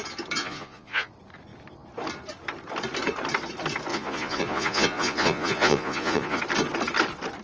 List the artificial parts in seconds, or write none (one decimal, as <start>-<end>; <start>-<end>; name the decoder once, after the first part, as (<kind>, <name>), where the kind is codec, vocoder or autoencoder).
0.4-1.1 (vocoder, Vocos); 3.9-6.4